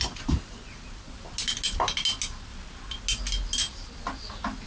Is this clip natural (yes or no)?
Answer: yes